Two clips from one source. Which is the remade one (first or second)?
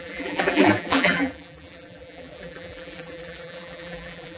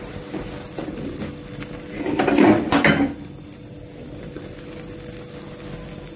first